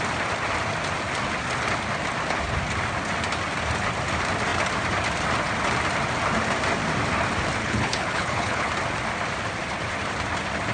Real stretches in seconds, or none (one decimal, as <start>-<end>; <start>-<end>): 0.0-7.6; 8.7-10.7